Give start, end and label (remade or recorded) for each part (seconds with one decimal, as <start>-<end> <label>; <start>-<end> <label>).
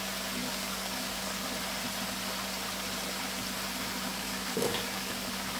0.0-0.4 recorded; 0.4-1.5 remade; 1.5-4.1 recorded; 4.1-5.6 remade